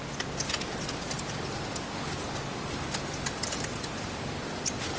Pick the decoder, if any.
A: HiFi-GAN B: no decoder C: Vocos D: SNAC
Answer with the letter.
B